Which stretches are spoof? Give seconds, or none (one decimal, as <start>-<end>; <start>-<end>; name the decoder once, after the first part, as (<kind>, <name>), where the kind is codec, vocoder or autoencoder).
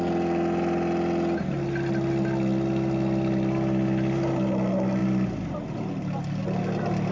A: none